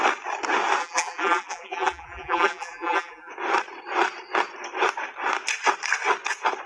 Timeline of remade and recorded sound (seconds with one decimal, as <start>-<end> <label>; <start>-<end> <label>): 0.0-0.8 recorded; 0.8-3.3 remade; 3.3-6.7 recorded